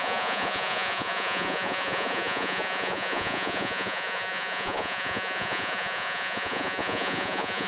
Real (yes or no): no